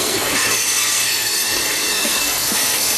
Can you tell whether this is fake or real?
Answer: fake